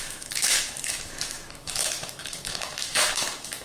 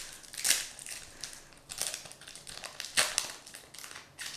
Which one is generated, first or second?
first